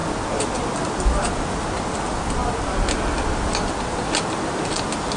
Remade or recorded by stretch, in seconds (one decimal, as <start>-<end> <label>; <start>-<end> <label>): 0.0-5.2 recorded